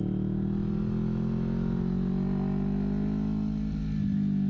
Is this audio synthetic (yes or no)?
no